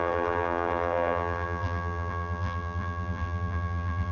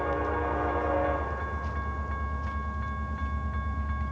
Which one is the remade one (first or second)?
first